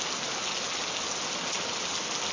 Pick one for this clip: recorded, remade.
recorded